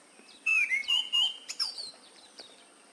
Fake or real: fake